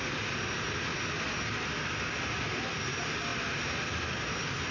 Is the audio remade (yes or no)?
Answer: no